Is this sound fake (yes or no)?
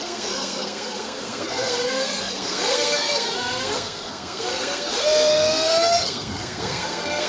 yes